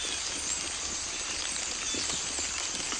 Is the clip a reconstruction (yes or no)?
no